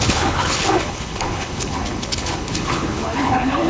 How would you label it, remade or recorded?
remade